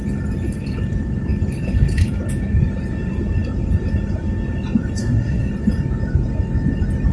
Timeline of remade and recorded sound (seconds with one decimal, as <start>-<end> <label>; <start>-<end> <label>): 0.0-5.0 recorded; 5.0-5.5 remade; 5.5-7.1 recorded